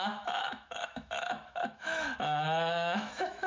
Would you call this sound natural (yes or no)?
no